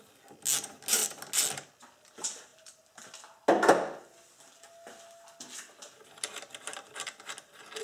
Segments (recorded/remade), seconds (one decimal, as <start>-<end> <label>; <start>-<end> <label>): 0.0-7.8 recorded